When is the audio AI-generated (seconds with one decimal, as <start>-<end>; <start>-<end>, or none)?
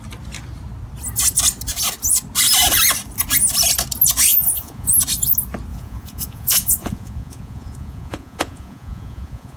4.3-5.0; 5.7-9.6